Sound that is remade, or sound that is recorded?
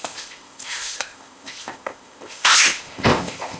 remade